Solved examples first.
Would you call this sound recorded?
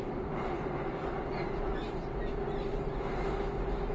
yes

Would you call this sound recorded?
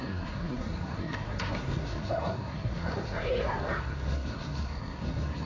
no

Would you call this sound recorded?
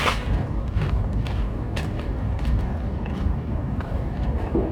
no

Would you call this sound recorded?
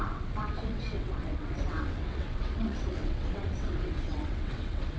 no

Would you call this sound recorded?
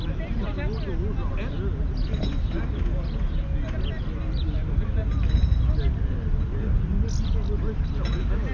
yes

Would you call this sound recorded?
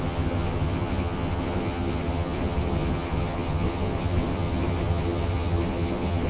no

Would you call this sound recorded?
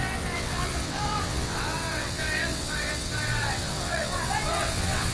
no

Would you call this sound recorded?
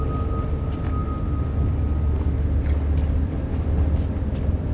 yes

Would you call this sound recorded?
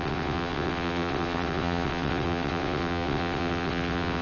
no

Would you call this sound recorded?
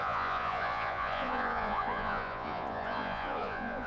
no